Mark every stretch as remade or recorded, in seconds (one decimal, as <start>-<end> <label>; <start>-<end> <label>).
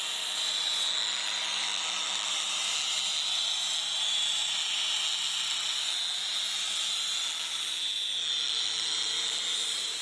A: 0.0-10.0 recorded